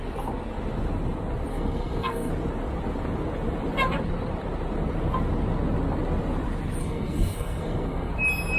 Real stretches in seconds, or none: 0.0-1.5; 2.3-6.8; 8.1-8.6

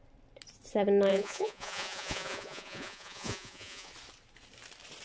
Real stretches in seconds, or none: 0.0-1.1; 3.9-5.0